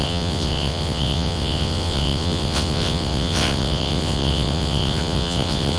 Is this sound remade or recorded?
remade